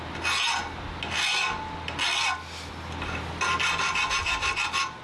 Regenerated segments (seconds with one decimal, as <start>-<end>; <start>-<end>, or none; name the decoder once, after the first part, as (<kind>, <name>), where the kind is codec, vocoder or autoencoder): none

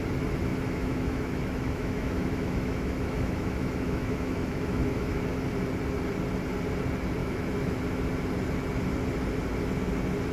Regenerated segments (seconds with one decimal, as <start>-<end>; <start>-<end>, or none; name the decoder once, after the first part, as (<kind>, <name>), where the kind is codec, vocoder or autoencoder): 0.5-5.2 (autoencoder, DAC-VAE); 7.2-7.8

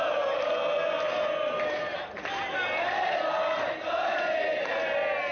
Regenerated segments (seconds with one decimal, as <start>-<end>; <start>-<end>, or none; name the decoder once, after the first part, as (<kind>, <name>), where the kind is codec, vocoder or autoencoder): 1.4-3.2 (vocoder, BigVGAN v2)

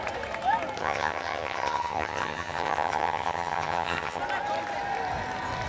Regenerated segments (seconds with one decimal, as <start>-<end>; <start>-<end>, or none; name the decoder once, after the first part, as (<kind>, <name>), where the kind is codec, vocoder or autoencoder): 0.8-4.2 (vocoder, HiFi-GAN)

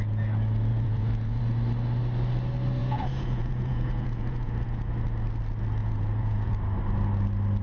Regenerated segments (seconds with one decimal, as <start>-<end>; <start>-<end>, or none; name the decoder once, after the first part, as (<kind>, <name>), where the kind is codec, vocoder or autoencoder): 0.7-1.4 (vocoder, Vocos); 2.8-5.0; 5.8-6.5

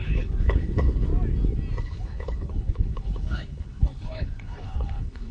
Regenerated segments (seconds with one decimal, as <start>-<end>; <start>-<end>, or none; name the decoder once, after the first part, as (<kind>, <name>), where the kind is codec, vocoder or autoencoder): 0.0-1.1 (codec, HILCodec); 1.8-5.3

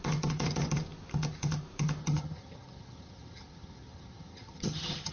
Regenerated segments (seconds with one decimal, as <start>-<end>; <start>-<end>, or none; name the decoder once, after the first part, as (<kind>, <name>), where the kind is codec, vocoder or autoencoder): 2.0-5.1 (vocoder, HiFi-GAN)